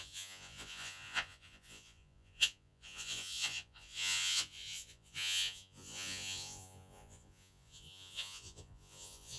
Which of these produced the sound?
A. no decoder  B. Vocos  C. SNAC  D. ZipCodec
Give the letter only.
B